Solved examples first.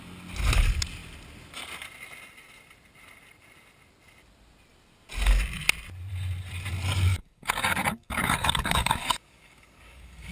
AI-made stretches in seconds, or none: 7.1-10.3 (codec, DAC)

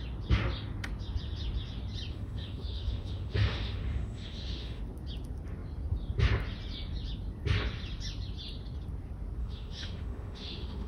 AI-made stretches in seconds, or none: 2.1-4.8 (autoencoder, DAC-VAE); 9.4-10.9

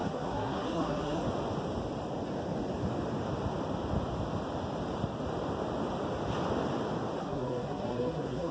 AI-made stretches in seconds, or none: 0.0-1.3 (codec, SNAC); 7.2-8.5

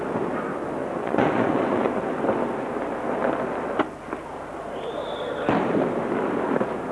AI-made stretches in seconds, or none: 0.8-2.0 (vocoder, Vocos)